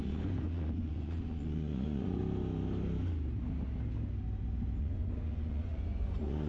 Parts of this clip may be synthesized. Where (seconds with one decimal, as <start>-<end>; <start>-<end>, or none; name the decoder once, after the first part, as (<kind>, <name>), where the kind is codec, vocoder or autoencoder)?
0.0-2.2 (vocoder, Vocos); 4.8-6.5